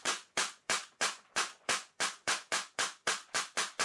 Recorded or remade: remade